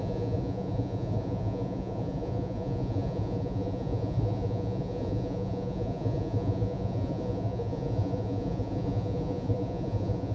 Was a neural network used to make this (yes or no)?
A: yes